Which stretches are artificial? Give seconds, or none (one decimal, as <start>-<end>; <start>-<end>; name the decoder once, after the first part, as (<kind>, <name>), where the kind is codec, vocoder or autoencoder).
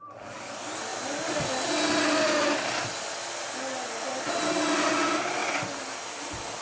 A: none